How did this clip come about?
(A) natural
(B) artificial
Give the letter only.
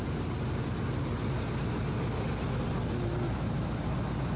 A